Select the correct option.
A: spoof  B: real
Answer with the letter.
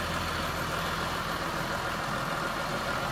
B